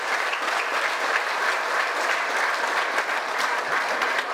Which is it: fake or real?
real